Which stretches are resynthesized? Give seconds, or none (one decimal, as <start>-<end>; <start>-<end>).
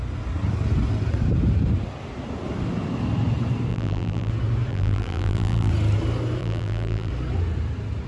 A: 3.7-4.3; 4.7-5.7; 6.4-7.1